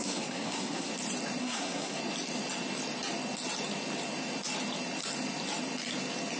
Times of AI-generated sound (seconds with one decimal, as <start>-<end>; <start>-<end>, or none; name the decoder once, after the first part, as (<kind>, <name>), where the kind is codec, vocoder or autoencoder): 0.0-0.9 (codec, SNAC); 1.4-2.0